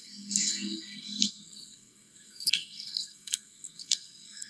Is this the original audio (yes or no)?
no